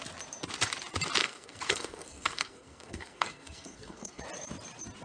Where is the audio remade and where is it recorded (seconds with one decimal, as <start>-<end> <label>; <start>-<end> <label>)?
0.0-1.2 recorded; 1.2-4.2 remade; 4.2-5.0 recorded